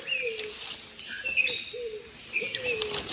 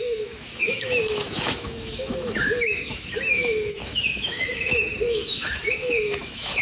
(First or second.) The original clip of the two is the first